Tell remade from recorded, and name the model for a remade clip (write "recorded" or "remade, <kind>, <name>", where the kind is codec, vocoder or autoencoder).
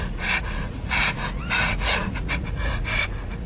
remade, vocoder, Vocos